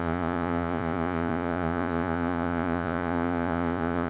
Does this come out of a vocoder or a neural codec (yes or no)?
yes